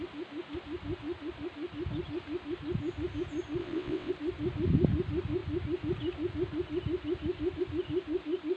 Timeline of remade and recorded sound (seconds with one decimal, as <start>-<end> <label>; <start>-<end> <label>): 0.0-3.6 recorded; 3.6-4.1 remade; 4.1-8.6 recorded

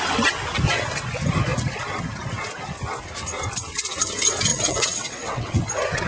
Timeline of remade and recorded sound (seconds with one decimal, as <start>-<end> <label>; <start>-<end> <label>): 0.0-4.5 recorded; 4.5-5.6 remade; 5.6-6.1 recorded